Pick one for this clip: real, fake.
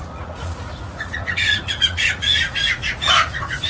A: fake